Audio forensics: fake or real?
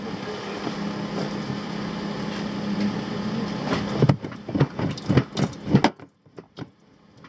real